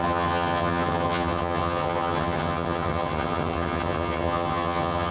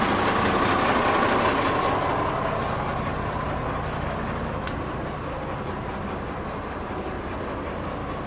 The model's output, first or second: first